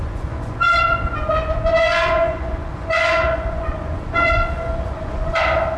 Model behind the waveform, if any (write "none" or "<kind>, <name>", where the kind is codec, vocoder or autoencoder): vocoder, Vocos